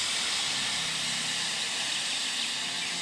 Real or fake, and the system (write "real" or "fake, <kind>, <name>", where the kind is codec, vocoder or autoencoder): real